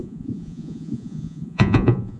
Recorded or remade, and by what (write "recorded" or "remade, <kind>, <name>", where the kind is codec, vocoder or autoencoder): remade, vocoder, Vocos